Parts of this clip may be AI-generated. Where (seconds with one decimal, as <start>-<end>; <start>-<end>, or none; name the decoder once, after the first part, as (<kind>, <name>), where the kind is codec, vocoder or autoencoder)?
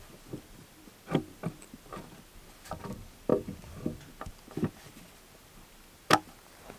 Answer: none